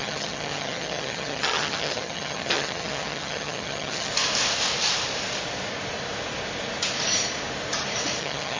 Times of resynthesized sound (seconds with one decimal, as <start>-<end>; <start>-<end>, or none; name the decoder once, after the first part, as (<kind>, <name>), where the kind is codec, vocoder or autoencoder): 0.0-4.1 (vocoder, HiFi-GAN); 8.2-8.6